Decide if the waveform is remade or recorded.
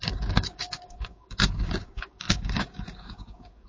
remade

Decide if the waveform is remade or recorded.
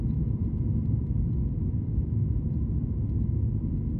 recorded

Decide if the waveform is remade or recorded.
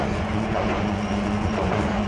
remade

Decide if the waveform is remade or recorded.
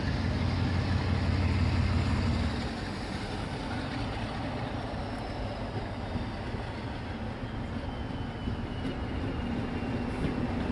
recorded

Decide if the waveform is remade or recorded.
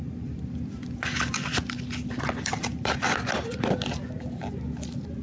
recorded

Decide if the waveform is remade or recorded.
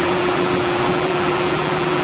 remade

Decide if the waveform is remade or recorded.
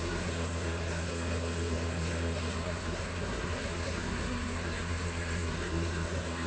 remade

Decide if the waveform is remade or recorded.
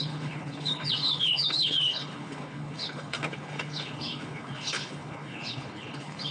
remade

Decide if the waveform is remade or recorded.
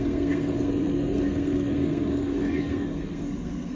remade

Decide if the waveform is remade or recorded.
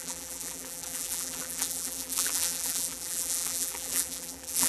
remade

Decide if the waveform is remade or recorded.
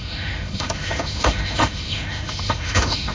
remade